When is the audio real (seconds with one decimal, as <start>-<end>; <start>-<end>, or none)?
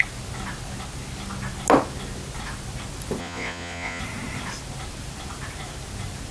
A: 0.0-3.2; 4.0-6.3